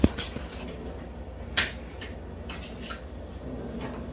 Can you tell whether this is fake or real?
real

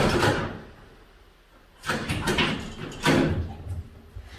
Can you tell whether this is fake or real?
real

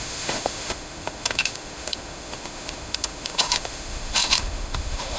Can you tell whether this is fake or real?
fake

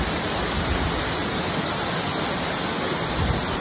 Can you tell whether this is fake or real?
real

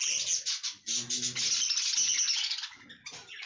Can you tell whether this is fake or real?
real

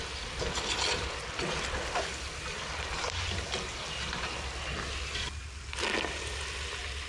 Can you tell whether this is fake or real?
real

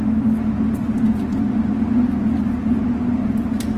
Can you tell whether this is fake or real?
real